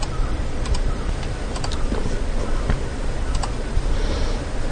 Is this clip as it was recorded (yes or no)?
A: no